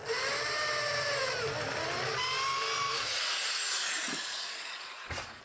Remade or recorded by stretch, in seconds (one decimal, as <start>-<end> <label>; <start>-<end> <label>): 0.0-2.9 recorded; 2.9-5.4 remade